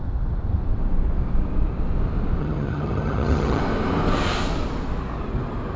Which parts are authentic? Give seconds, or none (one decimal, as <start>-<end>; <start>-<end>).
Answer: 0.0-2.4; 3.6-5.8